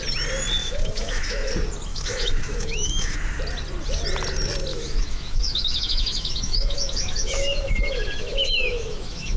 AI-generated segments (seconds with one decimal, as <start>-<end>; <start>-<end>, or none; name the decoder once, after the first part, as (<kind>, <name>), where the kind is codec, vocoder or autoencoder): 0.6-1.5 (autoencoder, DAC-VAE); 1.9-3.4; 4.7-9.4